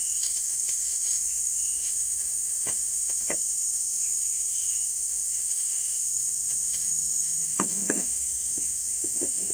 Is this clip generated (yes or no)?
yes